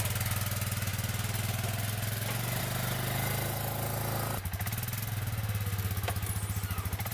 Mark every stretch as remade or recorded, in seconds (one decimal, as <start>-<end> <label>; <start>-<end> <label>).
0.0-7.1 recorded